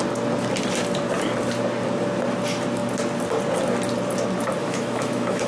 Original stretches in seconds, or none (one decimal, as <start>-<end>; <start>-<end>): 0.0-4.6